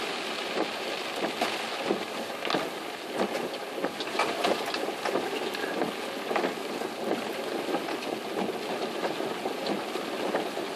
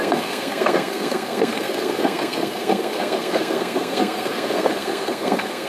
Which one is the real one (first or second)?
first